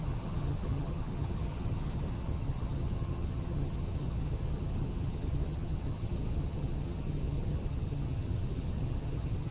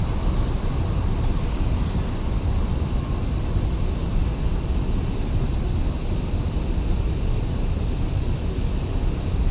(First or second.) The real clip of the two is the second